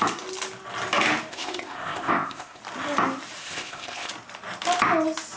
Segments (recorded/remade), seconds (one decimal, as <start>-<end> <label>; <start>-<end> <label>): 0.0-1.3 recorded; 1.3-2.6 remade; 2.6-3.4 recorded; 3.4-4.1 remade; 4.1-5.4 recorded